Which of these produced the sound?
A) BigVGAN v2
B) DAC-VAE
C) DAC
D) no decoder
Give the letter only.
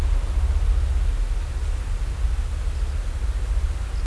D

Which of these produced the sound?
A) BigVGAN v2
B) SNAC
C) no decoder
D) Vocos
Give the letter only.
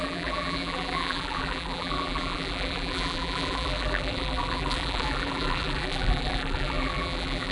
A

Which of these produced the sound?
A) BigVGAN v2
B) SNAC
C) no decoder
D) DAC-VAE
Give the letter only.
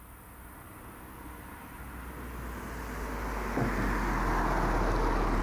C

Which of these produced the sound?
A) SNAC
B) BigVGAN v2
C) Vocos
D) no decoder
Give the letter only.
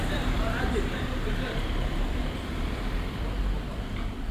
B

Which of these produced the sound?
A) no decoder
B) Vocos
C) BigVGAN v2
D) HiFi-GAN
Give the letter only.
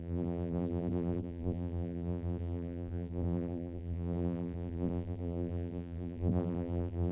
C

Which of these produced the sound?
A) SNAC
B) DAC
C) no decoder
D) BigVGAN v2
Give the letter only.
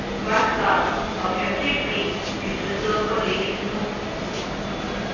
C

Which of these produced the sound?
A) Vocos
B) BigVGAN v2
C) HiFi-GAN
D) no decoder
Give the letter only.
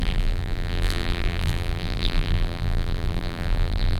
B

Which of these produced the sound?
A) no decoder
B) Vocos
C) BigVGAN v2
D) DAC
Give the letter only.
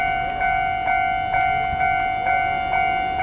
A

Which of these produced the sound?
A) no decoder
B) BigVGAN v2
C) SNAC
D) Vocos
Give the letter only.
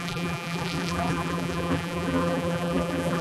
B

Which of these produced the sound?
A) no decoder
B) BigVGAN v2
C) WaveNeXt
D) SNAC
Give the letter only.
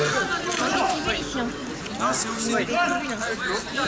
A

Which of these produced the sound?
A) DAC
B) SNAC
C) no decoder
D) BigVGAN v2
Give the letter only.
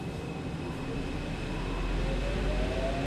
C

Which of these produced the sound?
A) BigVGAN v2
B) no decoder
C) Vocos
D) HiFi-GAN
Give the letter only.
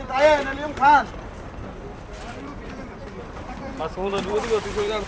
A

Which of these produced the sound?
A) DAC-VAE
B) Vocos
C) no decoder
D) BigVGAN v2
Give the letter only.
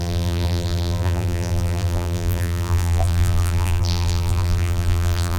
D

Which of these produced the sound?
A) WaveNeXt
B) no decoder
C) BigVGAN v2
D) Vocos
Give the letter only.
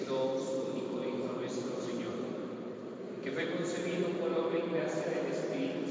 C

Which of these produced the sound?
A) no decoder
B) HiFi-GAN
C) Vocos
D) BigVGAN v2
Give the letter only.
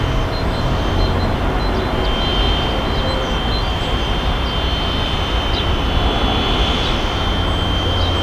A